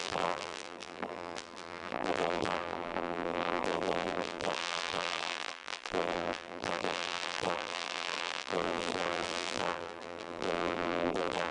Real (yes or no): no